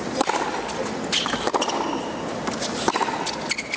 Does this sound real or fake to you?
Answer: real